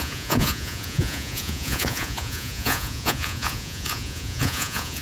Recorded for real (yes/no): no